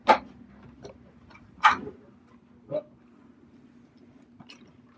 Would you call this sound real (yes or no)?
yes